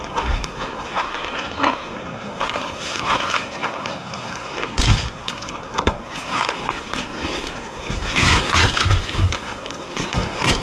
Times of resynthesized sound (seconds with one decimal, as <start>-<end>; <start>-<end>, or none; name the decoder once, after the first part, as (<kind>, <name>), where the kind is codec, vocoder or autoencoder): 0.0-10.6 (codec, SNAC)